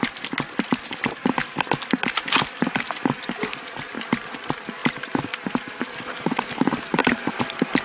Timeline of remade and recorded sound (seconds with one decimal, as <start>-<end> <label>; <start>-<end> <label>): 0.0-7.8 recorded

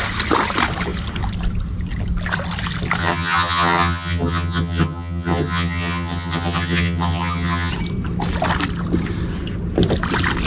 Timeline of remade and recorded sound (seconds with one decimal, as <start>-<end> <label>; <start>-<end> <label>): 0.0-3.0 recorded; 3.0-7.7 remade; 7.7-10.5 recorded

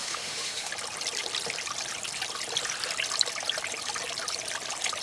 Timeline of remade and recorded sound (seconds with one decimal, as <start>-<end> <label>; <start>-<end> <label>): 0.0-0.7 remade; 0.7-5.0 recorded

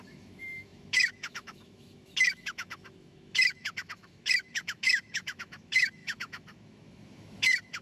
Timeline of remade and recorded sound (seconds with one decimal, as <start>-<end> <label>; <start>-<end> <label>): 0.0-7.8 remade

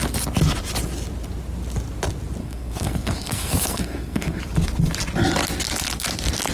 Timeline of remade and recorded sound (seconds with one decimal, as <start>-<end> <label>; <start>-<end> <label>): 0.0-2.4 recorded; 2.4-4.4 remade; 4.4-6.5 recorded

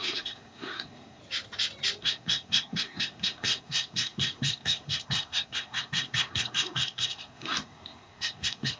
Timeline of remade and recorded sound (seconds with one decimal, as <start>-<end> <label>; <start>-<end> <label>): 0.0-1.2 remade; 1.2-2.0 recorded; 2.0-8.8 remade

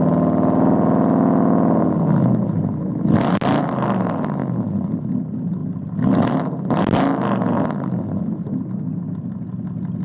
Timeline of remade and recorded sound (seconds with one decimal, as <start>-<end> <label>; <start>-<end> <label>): 0.0-10.0 recorded